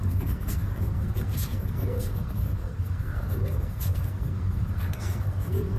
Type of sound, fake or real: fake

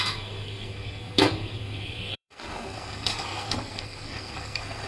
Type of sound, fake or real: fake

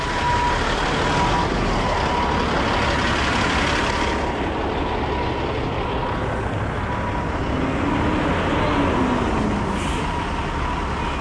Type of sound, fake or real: real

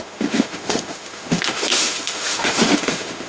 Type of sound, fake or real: fake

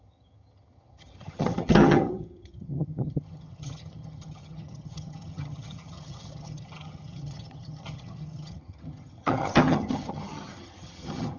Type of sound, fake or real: fake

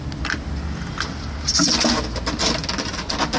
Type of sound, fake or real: real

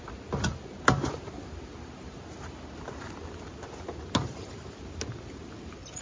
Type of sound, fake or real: real